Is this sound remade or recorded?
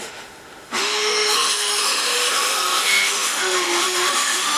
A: remade